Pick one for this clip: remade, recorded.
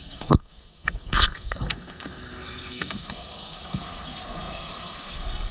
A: remade